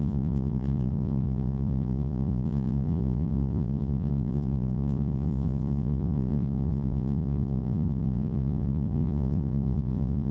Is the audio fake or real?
fake